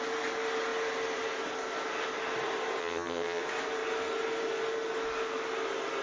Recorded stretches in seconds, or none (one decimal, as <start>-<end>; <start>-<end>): 0.0-2.8; 3.4-6.0